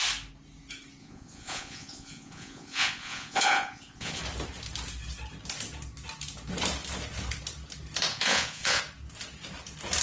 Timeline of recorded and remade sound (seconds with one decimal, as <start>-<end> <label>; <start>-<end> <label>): 0.0-1.0 recorded; 1.0-4.2 remade; 4.2-8.1 recorded; 8.1-8.8 remade; 8.8-10.0 recorded